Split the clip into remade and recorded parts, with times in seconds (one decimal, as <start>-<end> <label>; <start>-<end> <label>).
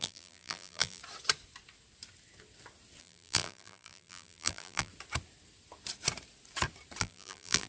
0.0-1.0 remade; 1.0-3.0 recorded; 3.0-4.9 remade; 4.9-7.0 recorded; 7.0-7.7 remade